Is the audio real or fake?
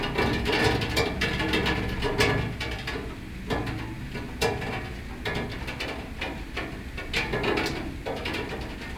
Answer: real